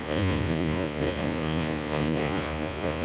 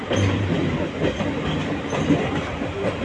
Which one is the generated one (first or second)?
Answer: first